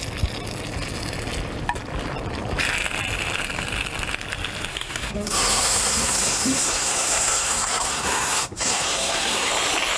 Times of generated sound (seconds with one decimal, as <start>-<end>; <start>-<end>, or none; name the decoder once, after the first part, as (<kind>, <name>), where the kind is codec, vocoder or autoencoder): 4.7-9.5 (codec, SNAC)